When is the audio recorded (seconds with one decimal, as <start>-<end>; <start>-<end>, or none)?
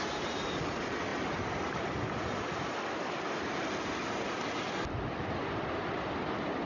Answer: 0.0-6.7